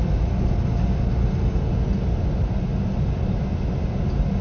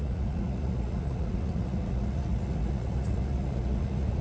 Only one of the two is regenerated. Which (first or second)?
second